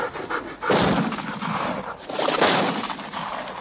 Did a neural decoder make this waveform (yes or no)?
no